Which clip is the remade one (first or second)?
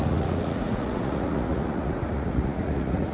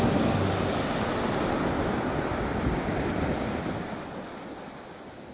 first